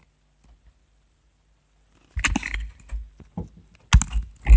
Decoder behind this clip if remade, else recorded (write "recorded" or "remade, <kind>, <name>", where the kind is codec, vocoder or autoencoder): recorded